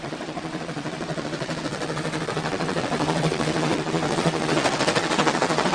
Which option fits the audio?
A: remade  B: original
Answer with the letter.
A